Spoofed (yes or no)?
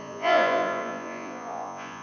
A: yes